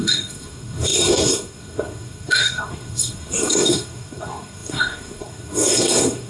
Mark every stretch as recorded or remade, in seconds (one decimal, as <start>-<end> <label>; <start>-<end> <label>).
0.0-6.3 remade